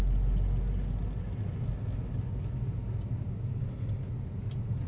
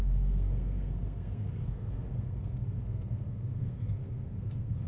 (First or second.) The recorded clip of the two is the first